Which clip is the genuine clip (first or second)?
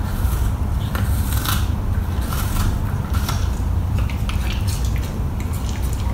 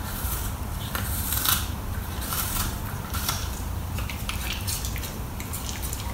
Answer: first